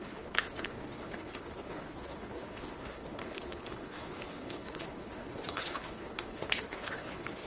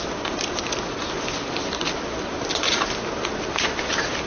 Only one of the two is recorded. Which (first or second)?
second